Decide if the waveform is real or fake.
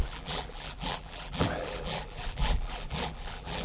fake